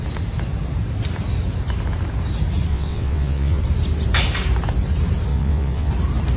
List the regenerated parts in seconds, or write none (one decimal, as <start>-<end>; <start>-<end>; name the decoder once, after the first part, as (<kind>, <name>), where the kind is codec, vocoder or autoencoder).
2.7-3.6 (vocoder, WaveNeXt); 5.3-5.9